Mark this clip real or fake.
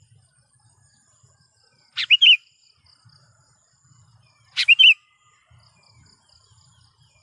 real